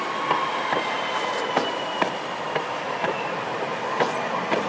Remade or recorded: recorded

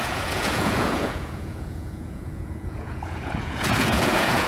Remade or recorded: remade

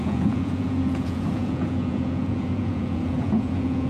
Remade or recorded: remade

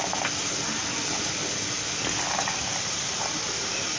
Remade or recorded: recorded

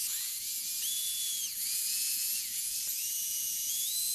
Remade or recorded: remade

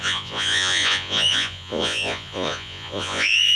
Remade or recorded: remade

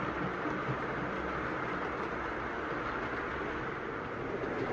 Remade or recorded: recorded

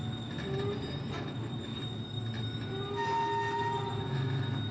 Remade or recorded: recorded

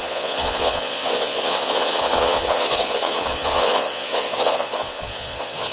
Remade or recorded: remade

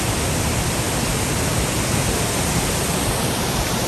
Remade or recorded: recorded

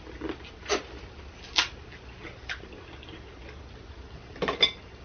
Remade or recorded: recorded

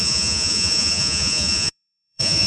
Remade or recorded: remade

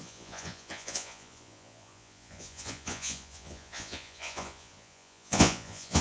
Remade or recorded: remade